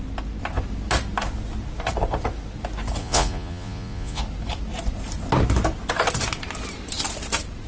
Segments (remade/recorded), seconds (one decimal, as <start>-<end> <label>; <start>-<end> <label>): 0.0-3.0 recorded; 3.0-4.2 remade; 4.2-7.7 recorded